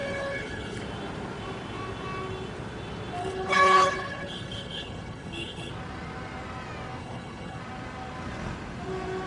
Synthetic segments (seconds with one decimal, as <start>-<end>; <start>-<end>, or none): 0.0-0.8; 3.2-5.7; 7.0-7.6